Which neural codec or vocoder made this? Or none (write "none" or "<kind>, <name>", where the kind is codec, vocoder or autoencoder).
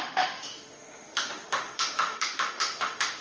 autoencoder, DAC-VAE